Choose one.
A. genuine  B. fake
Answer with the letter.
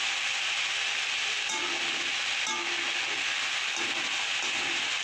A